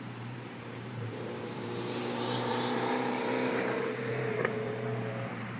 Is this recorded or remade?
remade